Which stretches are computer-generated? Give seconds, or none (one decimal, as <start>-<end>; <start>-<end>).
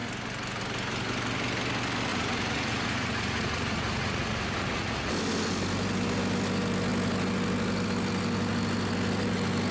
2.1-5.1